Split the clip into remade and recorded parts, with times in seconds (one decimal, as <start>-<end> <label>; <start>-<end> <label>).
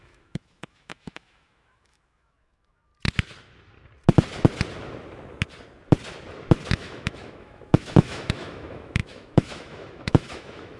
0.0-2.9 remade; 2.9-6.7 recorded; 6.7-10.8 remade